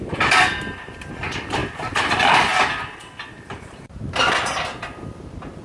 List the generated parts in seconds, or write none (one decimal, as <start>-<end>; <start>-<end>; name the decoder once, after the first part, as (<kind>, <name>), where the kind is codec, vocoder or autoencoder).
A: none